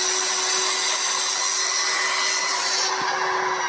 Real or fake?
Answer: real